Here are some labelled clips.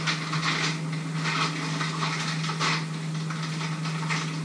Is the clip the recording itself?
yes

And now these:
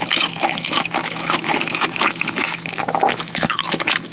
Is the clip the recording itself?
no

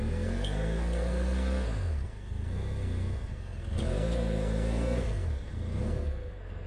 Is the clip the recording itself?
no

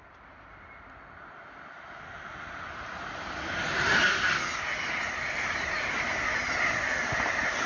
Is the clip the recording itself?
yes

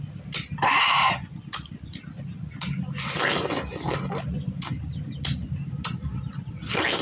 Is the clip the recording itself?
yes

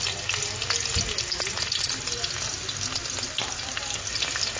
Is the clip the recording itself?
yes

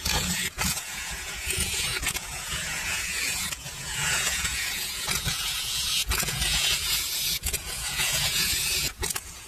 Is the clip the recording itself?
no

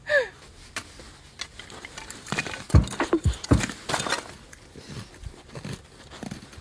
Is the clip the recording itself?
yes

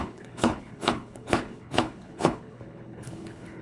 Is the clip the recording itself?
no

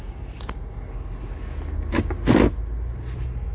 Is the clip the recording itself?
yes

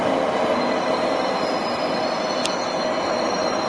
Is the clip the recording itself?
yes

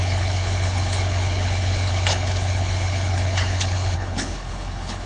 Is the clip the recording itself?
no